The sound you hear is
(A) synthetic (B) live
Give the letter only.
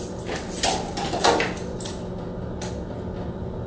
B